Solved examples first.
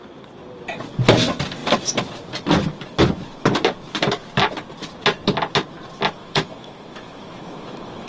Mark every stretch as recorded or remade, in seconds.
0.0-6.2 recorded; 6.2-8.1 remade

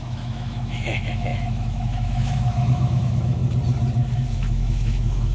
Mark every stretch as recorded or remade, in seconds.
0.0-3.4 remade; 3.4-4.3 recorded; 4.3-5.3 remade

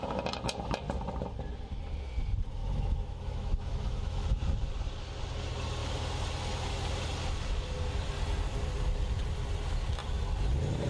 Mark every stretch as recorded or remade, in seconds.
0.0-2.6 recorded; 2.6-4.2 remade; 4.2-10.9 recorded

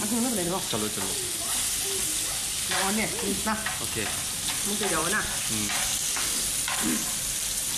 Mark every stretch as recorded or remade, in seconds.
0.0-7.8 recorded

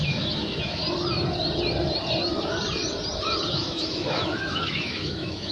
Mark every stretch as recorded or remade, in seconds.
0.0-0.8 remade; 0.8-3.5 recorded; 3.5-5.5 remade

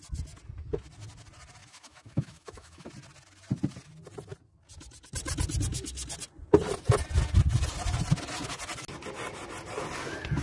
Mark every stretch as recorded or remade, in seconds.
0.0-1.6 recorded; 1.6-2.9 remade; 2.9-10.4 recorded

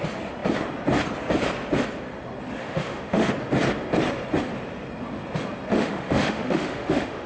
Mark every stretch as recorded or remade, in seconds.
0.0-2.6 recorded; 2.6-3.3 remade; 3.3-5.7 recorded; 5.7-7.3 remade

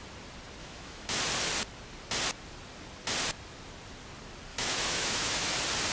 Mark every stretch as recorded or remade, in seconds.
0.0-0.6 recorded; 0.6-1.2 remade; 1.2-4.5 recorded; 4.5-5.5 remade; 5.5-5.9 recorded